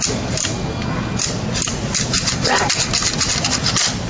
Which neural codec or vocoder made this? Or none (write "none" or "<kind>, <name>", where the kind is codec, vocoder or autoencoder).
none